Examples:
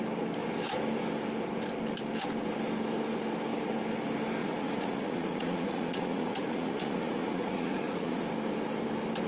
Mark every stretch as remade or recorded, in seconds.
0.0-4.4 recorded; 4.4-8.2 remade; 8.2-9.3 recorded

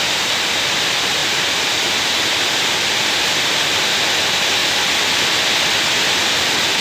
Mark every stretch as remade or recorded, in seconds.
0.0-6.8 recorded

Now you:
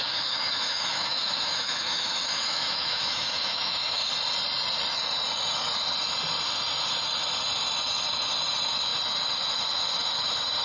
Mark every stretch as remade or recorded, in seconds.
0.0-4.1 remade; 4.1-10.6 recorded

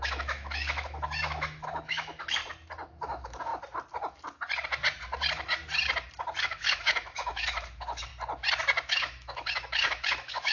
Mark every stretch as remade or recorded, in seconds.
0.0-2.4 remade; 2.4-2.9 recorded; 2.9-3.5 remade; 3.5-6.4 recorded; 6.4-8.1 remade; 8.1-8.9 recorded; 8.9-10.5 remade